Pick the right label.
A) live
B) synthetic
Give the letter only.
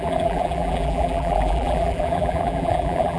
B